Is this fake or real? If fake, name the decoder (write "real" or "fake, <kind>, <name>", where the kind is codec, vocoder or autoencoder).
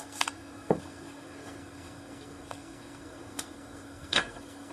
fake, codec, SNAC